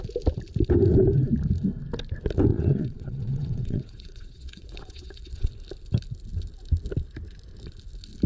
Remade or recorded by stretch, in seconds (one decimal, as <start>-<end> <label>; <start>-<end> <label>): 0.0-2.5 recorded; 2.5-5.5 remade; 5.5-8.3 recorded